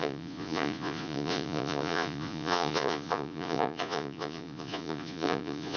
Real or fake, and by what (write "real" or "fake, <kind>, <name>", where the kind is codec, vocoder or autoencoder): fake, vocoder, Vocos